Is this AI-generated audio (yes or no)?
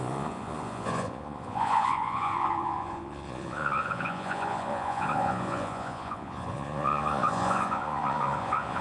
yes